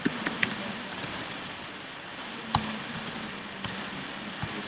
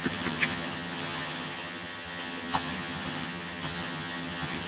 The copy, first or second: second